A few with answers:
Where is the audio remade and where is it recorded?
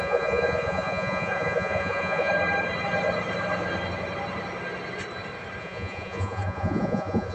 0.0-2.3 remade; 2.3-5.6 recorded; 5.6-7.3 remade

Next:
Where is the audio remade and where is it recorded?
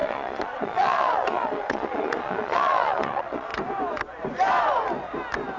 0.0-3.5 remade; 3.5-5.6 recorded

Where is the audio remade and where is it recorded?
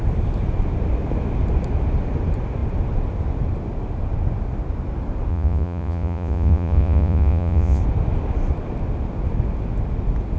0.0-5.3 recorded; 5.3-7.8 remade; 7.8-10.4 recorded